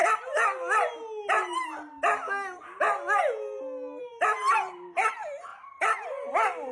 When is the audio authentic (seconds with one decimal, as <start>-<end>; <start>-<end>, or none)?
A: 0.0-4.0